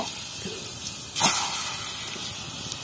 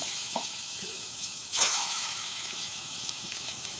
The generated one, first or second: second